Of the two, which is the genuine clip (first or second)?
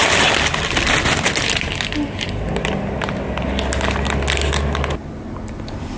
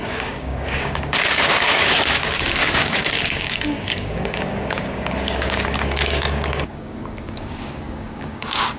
first